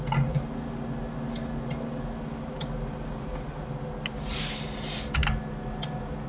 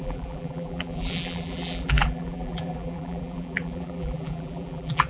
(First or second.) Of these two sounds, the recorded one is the first